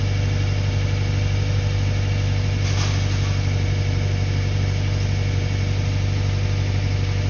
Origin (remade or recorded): recorded